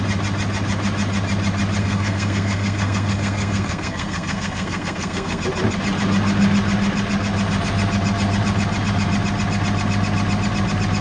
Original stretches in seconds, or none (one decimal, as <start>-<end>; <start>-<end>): 0.0-1.8; 5.4-11.0

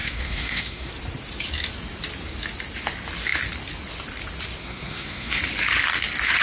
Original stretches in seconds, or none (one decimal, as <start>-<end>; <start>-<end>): 0.9-4.6; 5.4-6.4